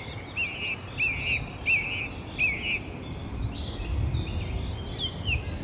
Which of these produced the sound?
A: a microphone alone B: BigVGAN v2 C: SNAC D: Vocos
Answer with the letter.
A